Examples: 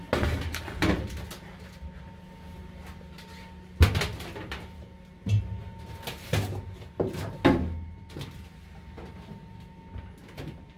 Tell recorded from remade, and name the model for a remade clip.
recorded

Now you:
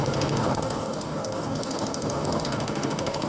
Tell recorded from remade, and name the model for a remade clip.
remade, codec, DAC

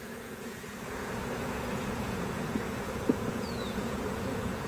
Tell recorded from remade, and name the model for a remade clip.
remade, vocoder, Vocos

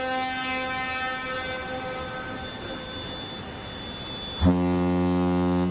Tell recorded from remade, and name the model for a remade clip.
recorded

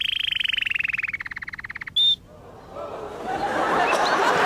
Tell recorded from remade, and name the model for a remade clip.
recorded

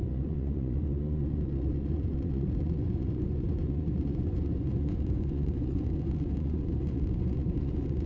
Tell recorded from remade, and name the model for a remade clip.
remade, vocoder, Vocos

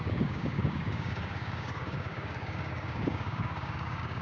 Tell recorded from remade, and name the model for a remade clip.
remade, codec, DAC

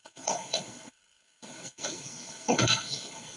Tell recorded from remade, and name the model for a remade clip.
remade, codec, SNAC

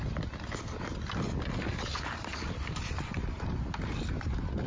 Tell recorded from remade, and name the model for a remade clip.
recorded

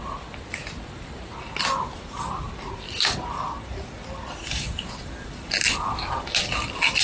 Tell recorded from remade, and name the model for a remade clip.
recorded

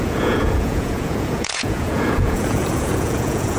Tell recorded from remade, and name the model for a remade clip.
remade, vocoder, Vocos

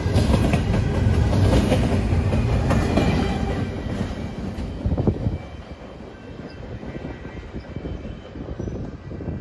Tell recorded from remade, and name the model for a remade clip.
recorded